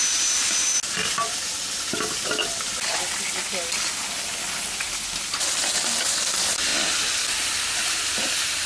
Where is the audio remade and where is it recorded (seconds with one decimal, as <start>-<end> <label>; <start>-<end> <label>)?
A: 0.0-8.7 recorded